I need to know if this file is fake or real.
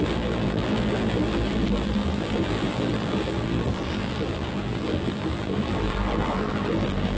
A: fake